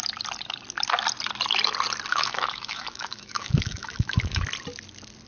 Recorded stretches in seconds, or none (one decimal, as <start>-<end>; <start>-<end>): 0.0-2.1; 4.4-5.3